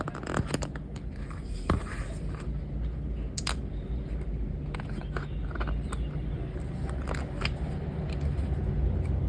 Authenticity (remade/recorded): recorded